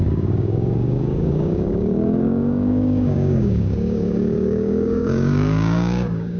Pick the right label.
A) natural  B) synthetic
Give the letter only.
B